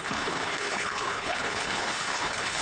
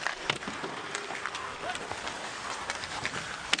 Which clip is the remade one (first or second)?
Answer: first